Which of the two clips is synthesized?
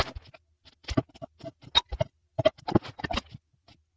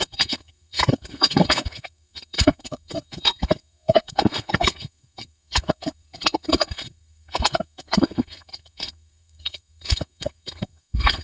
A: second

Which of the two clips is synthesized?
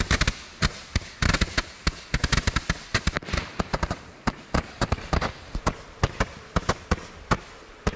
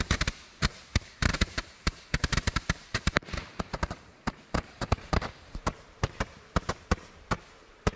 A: second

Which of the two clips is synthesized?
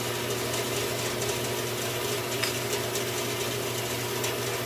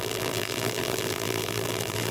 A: second